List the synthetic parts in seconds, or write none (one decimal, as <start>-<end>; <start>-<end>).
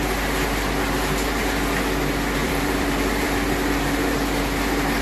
2.4-3.5